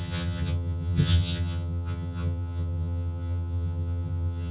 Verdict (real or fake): fake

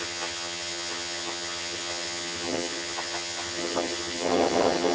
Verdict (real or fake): fake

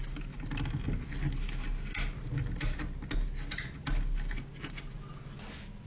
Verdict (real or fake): real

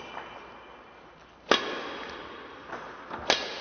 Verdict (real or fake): real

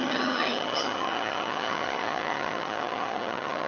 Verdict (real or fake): fake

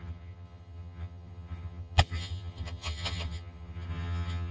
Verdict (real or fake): fake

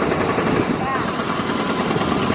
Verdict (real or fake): real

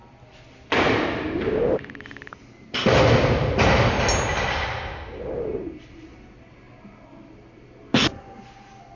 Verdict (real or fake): real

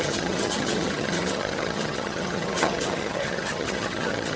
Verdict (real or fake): fake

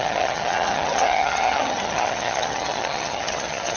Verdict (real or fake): fake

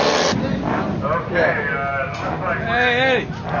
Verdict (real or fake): real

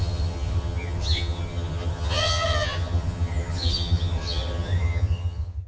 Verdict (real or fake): fake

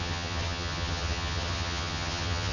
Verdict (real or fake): fake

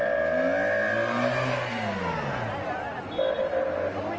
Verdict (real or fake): real